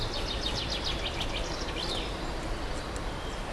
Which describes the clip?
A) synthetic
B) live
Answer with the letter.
B